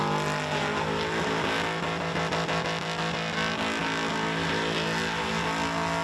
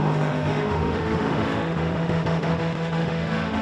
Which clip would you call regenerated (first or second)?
second